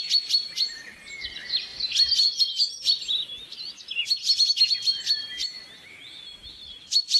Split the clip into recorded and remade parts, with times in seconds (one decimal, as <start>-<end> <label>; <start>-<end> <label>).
0.0-7.2 recorded